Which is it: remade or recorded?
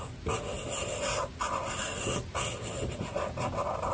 recorded